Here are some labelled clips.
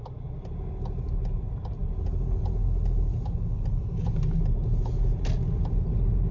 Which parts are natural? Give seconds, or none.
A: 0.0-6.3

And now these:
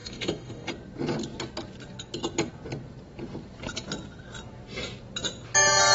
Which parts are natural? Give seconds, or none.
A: 0.7-5.9

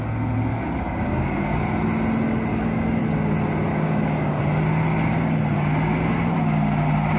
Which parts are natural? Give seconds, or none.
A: 0.0-0.5; 1.6-2.5; 3.0-3.7; 4.4-7.2

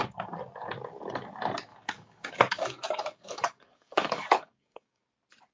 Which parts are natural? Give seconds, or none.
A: 0.0-1.7; 5.0-5.5

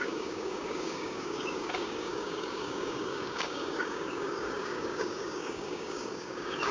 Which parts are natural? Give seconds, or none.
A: none

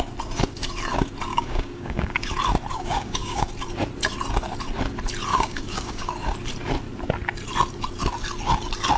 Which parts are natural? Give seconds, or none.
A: 0.0-1.3; 2.3-2.7; 3.5-5.3; 6.1-9.0

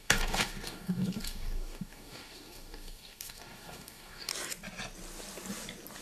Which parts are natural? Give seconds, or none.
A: 4.3-6.0